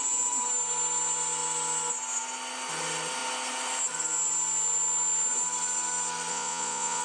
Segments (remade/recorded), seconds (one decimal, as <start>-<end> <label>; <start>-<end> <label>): 0.0-6.3 recorded; 6.3-7.0 remade